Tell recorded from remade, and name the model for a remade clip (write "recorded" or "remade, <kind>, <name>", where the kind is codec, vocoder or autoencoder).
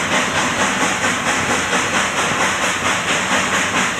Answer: recorded